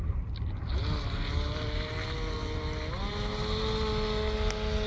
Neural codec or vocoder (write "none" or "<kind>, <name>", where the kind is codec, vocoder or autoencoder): none